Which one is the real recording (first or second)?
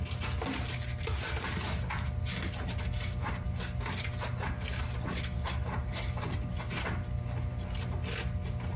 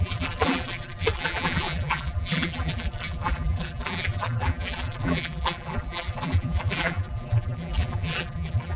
first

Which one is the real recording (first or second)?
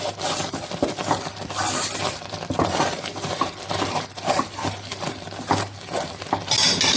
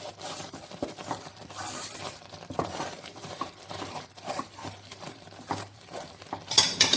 first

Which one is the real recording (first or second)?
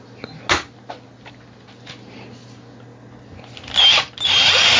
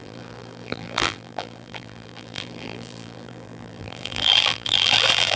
first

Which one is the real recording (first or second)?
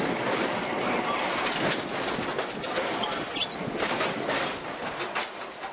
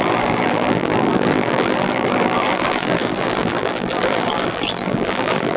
first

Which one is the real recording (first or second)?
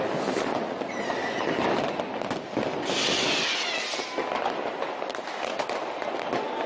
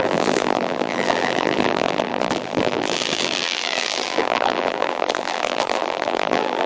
first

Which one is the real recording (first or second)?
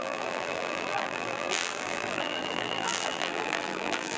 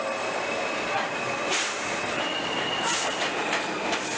second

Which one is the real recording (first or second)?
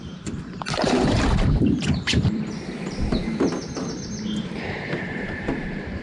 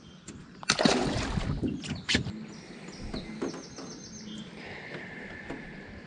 second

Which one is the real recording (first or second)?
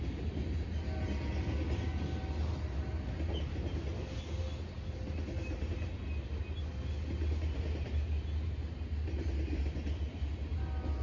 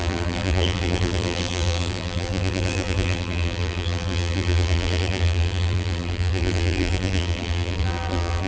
first